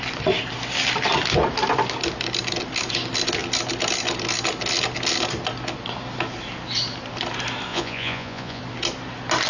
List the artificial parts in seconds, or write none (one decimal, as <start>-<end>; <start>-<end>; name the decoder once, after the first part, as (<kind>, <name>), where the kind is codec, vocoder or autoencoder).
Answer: 7.7-8.6 (vocoder, Vocos)